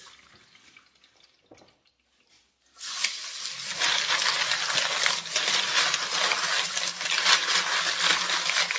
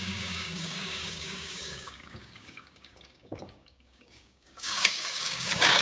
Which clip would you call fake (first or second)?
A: second